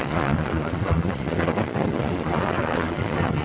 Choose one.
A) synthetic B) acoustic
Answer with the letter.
A